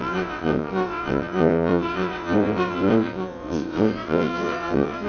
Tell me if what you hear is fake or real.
fake